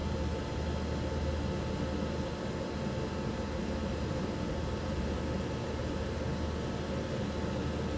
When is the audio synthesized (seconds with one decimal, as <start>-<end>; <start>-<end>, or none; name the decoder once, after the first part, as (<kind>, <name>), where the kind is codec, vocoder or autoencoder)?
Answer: 3.9-6.2 (vocoder, BigVGAN v2)